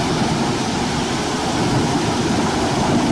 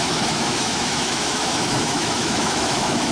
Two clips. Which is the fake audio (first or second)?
second